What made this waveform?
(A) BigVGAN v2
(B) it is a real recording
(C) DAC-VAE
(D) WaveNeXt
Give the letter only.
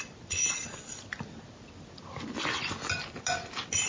B